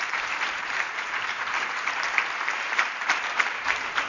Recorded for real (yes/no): no